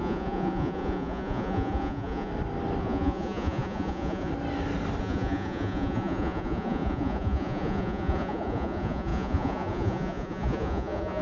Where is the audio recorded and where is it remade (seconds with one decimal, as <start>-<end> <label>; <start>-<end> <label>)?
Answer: 0.0-2.3 remade; 2.3-2.8 recorded; 2.8-4.3 remade; 4.3-5.0 recorded; 5.0-11.2 remade